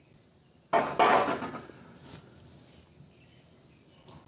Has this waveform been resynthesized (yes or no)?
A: no